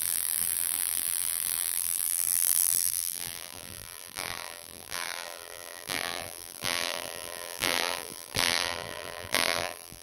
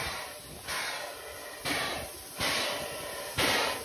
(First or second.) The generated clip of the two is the first